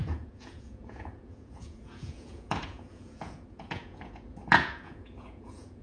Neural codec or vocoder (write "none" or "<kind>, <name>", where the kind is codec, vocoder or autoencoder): vocoder, Vocos